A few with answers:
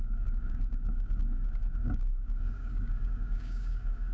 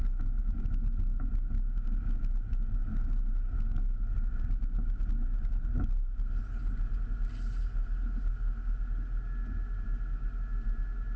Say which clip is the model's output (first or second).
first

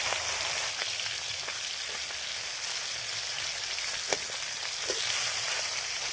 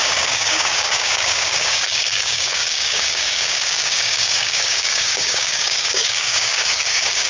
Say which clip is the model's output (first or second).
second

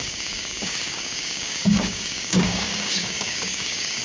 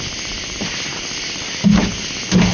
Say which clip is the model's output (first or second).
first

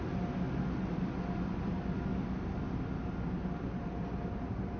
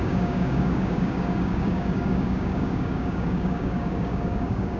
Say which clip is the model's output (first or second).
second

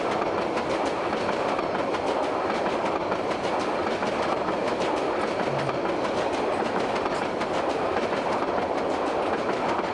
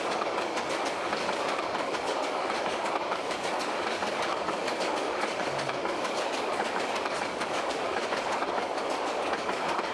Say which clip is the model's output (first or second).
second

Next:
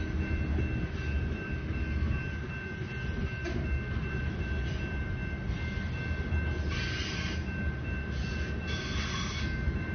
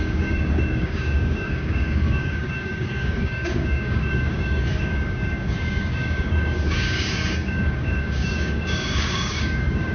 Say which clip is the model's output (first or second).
second